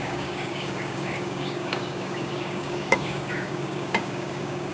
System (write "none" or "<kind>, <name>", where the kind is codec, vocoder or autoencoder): codec, DAC